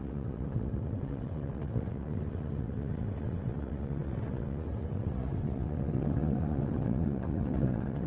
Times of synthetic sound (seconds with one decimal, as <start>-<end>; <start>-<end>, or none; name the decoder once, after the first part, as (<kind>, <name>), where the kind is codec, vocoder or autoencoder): 0.0-8.1 (vocoder, WaveNeXt)